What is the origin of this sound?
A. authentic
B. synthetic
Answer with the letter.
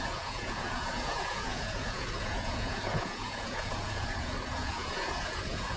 B